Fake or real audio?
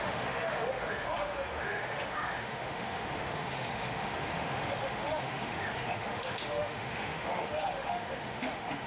fake